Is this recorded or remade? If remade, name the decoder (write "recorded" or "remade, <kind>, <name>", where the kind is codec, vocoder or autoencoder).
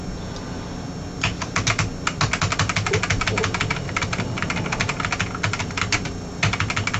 recorded